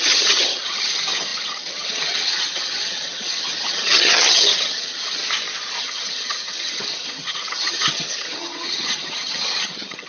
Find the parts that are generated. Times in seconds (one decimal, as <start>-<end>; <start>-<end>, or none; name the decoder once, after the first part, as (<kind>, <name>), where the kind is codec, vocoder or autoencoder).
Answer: 0.0-5.2 (vocoder, HiFi-GAN); 5.8-10.1